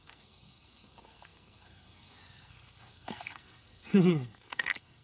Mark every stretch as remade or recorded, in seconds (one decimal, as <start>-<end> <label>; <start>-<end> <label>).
0.0-5.0 remade